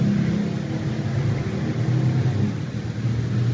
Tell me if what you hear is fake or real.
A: real